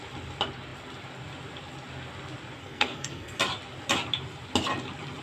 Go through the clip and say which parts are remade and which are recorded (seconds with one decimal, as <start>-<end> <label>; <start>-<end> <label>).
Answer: 0.0-2.6 recorded; 2.6-3.4 remade; 3.4-5.2 recorded